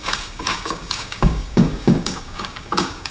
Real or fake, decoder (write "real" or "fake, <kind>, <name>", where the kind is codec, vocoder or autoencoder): fake, codec, DAC